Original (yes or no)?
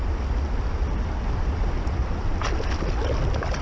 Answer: yes